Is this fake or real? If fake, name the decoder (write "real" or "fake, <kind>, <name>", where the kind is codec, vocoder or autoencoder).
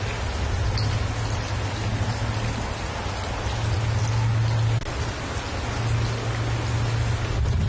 real